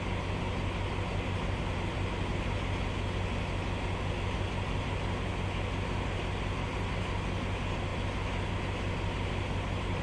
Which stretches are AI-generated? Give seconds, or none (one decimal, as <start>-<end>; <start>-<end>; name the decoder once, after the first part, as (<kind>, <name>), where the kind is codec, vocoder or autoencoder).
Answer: none